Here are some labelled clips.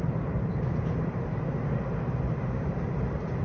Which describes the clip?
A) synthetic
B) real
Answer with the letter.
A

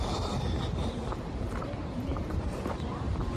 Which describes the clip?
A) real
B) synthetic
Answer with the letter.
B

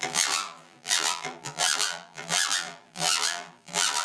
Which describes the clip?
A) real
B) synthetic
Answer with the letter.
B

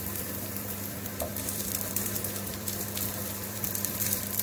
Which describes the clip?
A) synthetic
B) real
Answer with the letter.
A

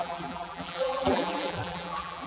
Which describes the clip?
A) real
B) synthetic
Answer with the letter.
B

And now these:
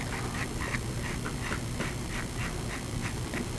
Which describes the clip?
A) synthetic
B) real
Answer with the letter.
A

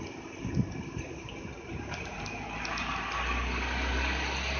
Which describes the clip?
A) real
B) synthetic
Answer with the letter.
A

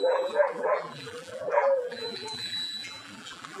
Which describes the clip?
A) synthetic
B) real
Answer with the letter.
A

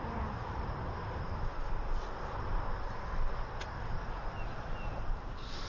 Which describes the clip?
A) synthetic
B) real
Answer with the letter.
B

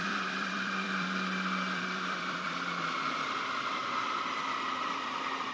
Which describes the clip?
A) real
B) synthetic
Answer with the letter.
B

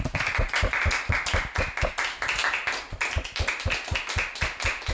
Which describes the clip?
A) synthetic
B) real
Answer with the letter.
B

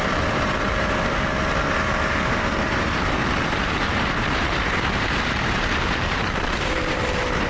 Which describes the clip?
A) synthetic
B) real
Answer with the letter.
A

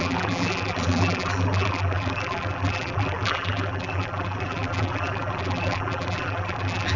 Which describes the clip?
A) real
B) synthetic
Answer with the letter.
B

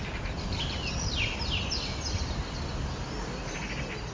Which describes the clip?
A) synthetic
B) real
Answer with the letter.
B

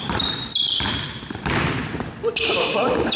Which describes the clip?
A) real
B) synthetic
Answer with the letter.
B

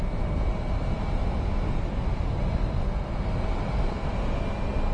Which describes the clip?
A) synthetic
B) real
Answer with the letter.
B